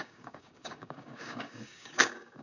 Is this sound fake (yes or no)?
yes